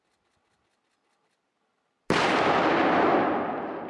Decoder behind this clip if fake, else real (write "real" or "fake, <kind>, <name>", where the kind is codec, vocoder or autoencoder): real